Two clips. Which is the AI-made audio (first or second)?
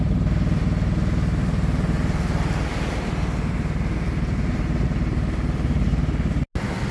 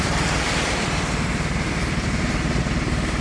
second